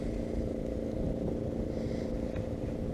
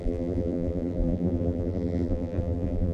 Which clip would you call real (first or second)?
first